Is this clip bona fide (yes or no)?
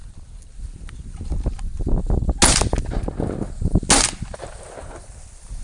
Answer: yes